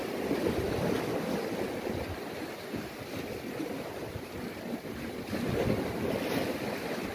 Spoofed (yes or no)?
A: no